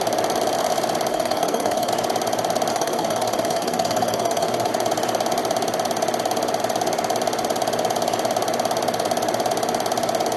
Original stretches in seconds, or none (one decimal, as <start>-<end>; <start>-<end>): 0.0-1.1; 1.9-2.7; 4.7-10.4